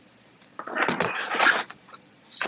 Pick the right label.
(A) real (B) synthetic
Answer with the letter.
B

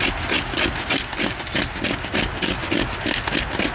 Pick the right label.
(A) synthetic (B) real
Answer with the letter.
B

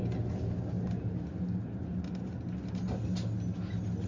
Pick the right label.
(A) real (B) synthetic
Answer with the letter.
A